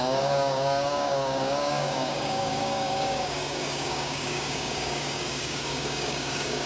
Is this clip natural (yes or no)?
no